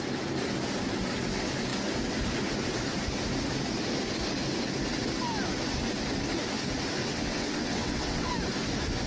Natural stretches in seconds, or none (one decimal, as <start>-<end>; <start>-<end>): 0.0-7.0; 8.3-9.1